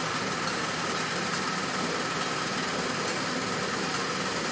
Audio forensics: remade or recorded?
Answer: recorded